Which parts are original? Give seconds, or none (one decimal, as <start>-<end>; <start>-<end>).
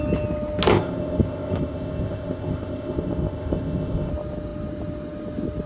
0.0-0.7; 4.1-5.7